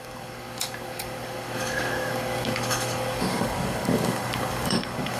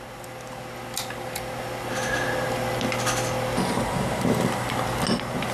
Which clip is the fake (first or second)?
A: first